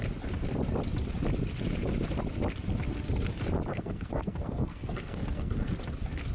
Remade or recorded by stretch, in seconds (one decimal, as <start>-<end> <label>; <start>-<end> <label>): 0.0-3.7 recorded; 3.7-5.7 remade; 5.7-6.3 recorded